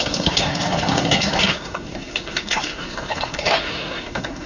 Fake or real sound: fake